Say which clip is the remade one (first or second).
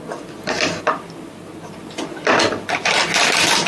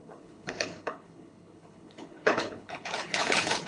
second